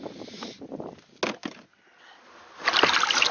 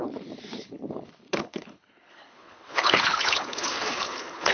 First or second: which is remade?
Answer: second